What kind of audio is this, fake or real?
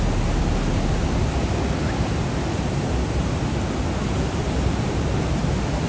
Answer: real